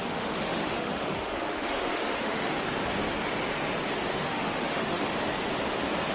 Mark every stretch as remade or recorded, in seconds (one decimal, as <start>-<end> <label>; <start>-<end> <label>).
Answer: 0.0-2.5 remade; 2.5-4.1 recorded; 4.1-5.1 remade; 5.1-6.1 recorded